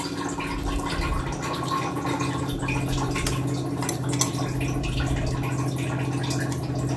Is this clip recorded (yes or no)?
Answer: yes